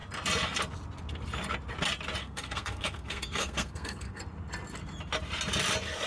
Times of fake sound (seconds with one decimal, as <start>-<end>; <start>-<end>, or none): 2.2-4.2